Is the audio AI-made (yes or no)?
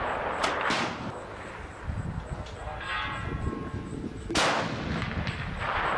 no